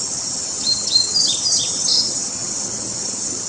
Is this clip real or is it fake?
fake